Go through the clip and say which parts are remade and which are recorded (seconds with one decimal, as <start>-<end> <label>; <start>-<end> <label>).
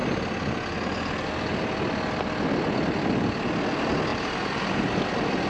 0.0-4.1 recorded; 4.1-5.0 remade; 5.0-5.5 recorded